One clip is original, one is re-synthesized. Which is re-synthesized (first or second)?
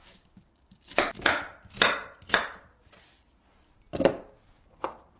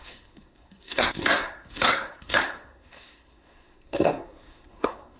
second